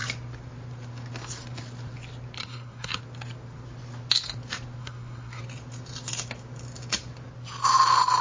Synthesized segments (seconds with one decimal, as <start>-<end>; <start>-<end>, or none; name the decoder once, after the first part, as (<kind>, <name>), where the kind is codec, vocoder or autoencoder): 2.4-3.0 (codec, SNAC); 4.8-5.4